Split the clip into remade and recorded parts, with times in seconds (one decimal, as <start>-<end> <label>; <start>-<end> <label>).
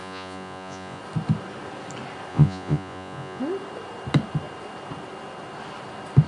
0.0-1.0 remade; 1.0-2.3 recorded; 2.3-3.4 remade; 3.4-6.3 recorded